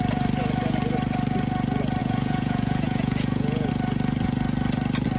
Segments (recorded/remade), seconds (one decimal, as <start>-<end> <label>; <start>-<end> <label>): 0.0-2.0 recorded; 2.0-3.7 remade; 3.7-5.2 recorded